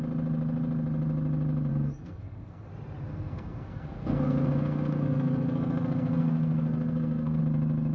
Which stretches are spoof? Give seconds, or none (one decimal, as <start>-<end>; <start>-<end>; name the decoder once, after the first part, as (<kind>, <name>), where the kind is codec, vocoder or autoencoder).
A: 1.7-2.7 (codec, SNAC); 3.1-7.4